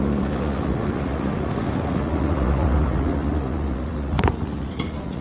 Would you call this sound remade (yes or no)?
yes